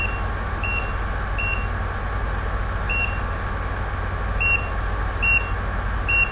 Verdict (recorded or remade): recorded